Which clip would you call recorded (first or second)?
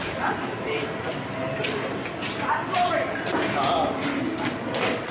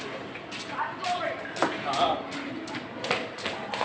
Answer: first